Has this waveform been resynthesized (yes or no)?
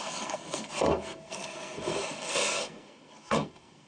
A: yes